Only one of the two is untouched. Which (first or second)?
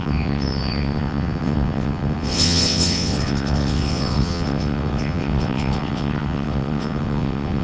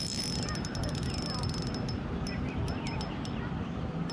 second